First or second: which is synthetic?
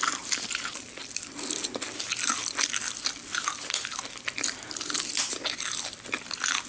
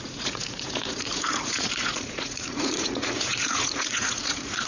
second